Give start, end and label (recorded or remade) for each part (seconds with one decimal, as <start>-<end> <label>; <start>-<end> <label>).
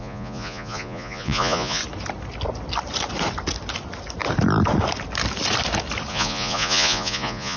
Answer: 0.0-1.8 remade; 1.8-6.1 recorded; 6.1-7.6 remade